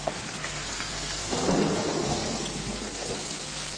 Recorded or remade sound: remade